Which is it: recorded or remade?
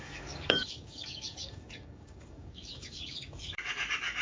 remade